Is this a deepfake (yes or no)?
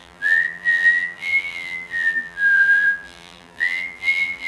yes